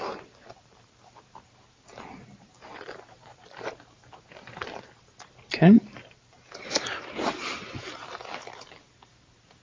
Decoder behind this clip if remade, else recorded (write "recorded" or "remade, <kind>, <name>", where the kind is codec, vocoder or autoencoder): remade, vocoder, BigVGAN v2